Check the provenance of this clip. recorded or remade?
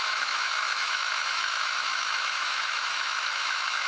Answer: remade